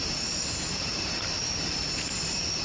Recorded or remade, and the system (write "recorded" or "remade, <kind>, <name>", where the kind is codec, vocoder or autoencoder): remade, vocoder, BigVGAN v2